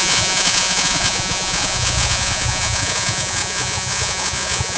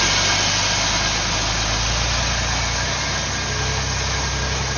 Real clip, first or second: second